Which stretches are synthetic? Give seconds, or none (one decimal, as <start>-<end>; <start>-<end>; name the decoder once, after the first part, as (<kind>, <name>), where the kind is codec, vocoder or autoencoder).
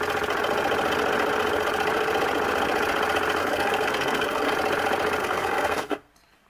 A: 3.4-4.5 (codec, SNAC); 5.2-6.1